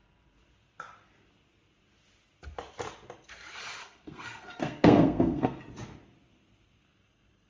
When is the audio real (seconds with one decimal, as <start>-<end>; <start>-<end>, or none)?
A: 0.0-3.8; 5.6-7.5